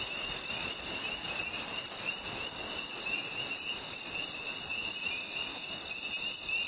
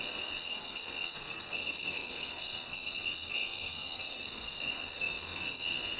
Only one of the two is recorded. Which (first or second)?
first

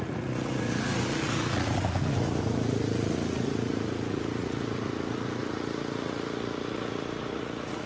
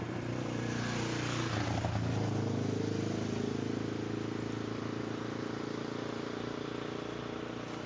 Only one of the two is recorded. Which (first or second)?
second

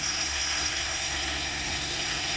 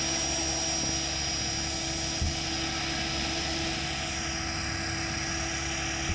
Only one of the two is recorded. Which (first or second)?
second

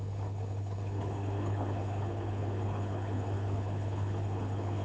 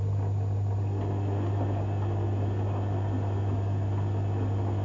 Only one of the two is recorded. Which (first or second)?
second